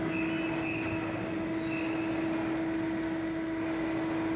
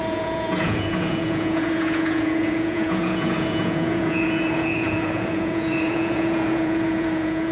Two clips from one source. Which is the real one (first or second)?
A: first